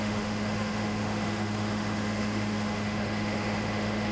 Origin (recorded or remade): remade